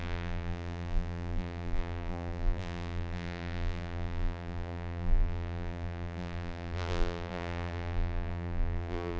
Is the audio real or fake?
fake